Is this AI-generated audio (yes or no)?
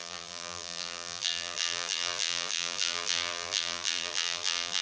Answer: yes